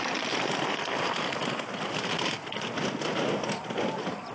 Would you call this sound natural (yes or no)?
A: yes